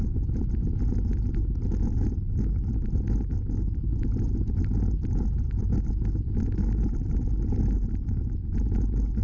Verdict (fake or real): real